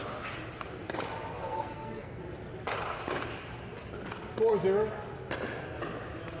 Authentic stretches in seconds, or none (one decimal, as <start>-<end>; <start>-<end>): 0.0-1.3; 2.2-6.4

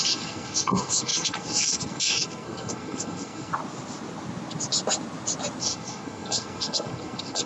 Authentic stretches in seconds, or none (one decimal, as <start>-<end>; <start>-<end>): 3.5-5.6